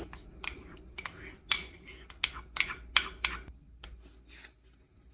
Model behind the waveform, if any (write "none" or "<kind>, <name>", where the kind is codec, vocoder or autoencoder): none